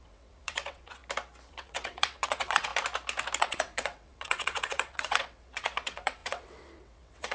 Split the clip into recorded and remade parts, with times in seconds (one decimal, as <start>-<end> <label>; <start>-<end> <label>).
0.0-1.0 remade; 1.0-1.5 recorded; 1.5-2.7 remade; 2.7-3.4 recorded; 3.4-7.3 remade